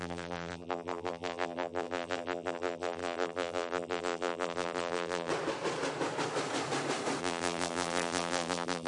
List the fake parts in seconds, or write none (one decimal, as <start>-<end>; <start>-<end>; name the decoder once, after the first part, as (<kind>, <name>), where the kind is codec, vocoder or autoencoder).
0.0-5.3 (vocoder, BigVGAN v2); 7.2-8.9